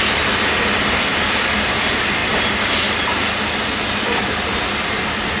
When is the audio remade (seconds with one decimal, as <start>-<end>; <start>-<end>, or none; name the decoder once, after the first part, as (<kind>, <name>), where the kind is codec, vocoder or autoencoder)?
none

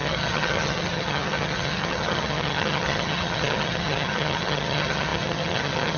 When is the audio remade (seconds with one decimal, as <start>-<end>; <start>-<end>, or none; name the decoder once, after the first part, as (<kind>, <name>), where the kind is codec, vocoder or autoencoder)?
0.0-6.0 (vocoder, HiFi-GAN)

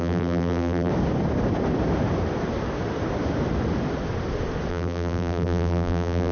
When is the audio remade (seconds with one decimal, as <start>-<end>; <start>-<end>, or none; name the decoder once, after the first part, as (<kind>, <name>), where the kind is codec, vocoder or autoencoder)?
0.0-0.9 (vocoder, BigVGAN v2); 4.7-6.3

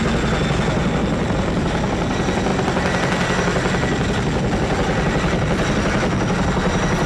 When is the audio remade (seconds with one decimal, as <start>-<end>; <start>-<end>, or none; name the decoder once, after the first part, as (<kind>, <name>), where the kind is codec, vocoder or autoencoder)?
none

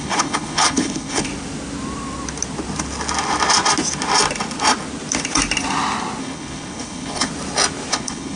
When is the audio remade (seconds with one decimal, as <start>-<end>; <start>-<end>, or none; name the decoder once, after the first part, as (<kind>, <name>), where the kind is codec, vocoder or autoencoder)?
0.0-1.3 (codec, HILCodec); 6.2-7.3; 7.9-8.4